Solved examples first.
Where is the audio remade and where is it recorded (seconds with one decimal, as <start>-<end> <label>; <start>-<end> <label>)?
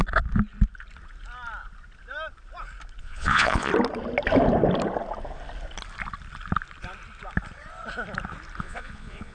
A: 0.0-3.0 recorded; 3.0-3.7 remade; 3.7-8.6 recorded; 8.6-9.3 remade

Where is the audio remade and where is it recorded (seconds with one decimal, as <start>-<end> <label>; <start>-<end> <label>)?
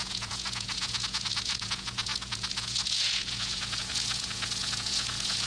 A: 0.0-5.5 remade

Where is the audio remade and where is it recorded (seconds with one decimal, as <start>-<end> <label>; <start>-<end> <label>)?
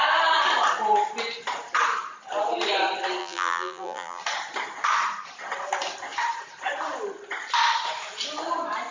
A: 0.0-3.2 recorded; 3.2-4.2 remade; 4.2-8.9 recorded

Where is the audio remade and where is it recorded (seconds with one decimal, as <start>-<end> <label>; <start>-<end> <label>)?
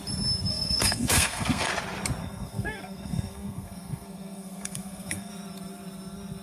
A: 0.0-0.5 recorded; 0.5-1.7 remade; 1.7-2.2 recorded; 2.2-5.3 remade; 5.3-6.4 recorded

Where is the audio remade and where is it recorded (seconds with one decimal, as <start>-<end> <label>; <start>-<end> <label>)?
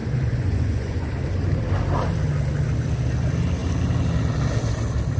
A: 0.0-1.1 remade; 1.1-5.2 recorded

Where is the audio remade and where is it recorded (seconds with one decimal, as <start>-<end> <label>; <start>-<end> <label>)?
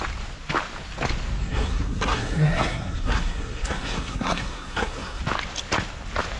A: 0.0-1.4 recorded; 1.4-5.2 remade; 5.2-6.4 recorded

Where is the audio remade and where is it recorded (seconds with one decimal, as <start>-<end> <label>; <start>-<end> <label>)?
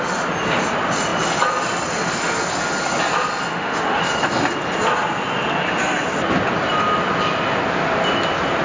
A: 0.0-3.5 recorded; 3.5-4.0 remade; 4.0-8.6 recorded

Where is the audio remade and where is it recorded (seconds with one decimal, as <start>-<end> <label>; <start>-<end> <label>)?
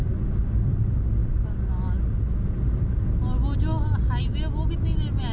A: 0.0-5.3 recorded